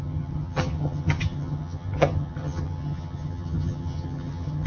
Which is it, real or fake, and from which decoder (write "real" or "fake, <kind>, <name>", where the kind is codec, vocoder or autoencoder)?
fake, vocoder, HiFi-GAN